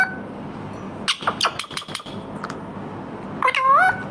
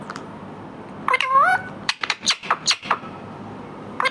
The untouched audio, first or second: first